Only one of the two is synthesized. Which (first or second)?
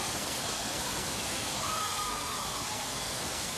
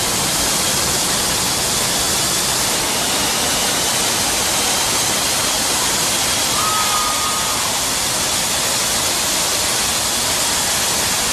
first